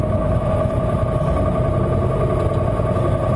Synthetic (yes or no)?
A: no